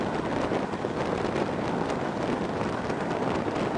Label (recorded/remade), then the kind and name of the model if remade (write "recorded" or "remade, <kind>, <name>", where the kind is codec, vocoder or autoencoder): recorded